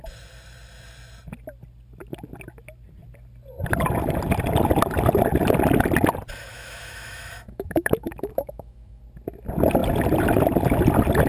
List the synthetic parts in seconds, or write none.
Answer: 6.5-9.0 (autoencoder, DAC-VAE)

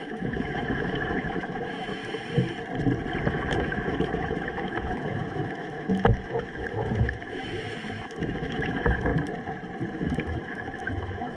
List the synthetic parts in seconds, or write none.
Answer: 0.0-2.0 (autoencoder, DAC-VAE); 3.3-9.1; 9.9-11.4

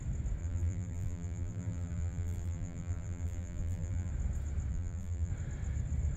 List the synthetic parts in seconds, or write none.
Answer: 0.4-4.1 (vocoder, BigVGAN v2); 4.7-5.3